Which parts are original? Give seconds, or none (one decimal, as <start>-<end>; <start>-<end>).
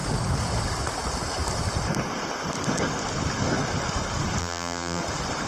0.0-4.4; 5.0-5.5